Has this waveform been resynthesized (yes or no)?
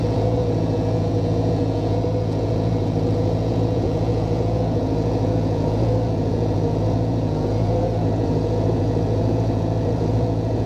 yes